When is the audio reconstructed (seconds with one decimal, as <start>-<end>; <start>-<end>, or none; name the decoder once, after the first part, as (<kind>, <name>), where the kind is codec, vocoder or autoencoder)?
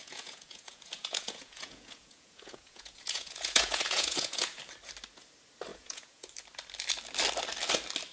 0.0-4.6 (vocoder, Vocos); 5.7-6.3